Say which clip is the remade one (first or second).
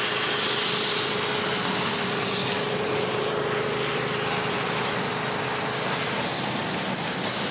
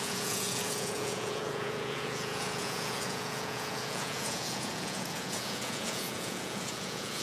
second